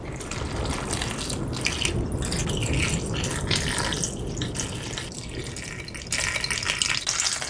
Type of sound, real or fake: real